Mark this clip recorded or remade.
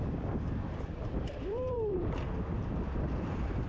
remade